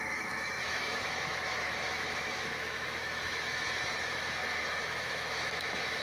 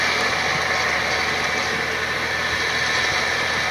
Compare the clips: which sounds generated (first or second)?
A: first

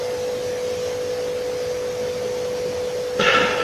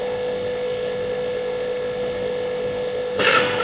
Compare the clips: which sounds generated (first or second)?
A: second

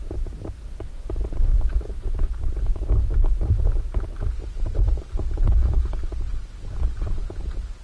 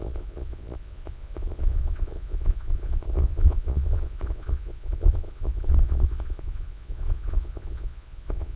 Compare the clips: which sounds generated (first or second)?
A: second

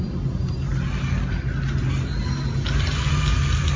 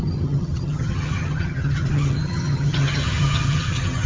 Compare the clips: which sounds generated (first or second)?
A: second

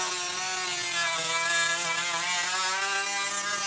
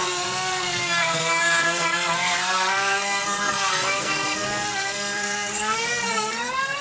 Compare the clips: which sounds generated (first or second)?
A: second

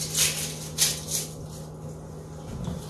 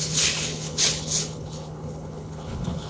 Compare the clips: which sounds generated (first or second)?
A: second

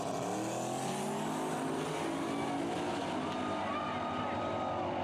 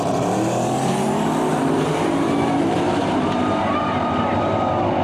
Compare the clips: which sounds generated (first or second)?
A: second